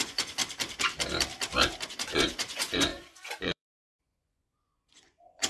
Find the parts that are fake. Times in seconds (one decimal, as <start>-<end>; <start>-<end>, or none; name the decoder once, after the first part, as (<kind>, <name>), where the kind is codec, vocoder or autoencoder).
0.0-0.4 (vocoder, Vocos); 1.9-5.5